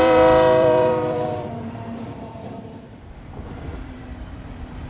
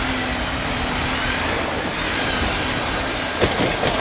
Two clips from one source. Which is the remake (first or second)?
first